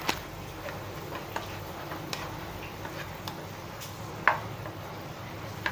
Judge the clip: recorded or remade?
recorded